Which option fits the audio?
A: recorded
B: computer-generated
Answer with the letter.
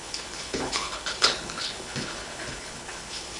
B